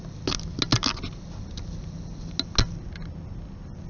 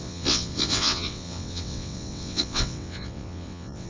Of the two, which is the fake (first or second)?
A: second